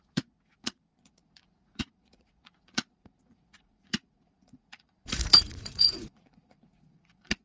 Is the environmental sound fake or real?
fake